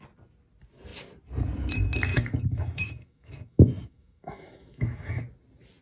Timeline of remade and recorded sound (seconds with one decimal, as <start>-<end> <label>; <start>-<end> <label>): 0.0-2.1 recorded; 2.1-5.2 remade; 5.2-5.8 recorded